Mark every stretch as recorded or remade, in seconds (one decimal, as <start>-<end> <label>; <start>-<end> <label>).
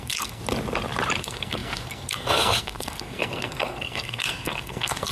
0.0-0.4 remade; 0.4-1.2 recorded; 1.2-5.1 remade